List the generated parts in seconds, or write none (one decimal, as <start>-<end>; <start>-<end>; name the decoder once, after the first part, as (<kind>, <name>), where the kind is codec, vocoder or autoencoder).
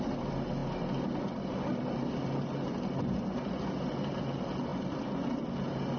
none